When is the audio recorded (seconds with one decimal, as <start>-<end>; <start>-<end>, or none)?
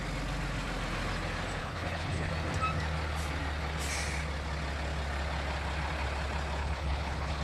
0.0-1.6; 2.3-6.6